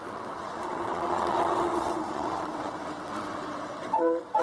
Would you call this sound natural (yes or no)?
no